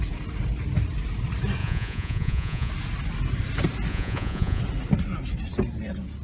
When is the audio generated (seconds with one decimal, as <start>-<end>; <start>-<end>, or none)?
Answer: 1.6-2.7; 3.9-4.6